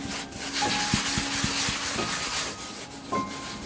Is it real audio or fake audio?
real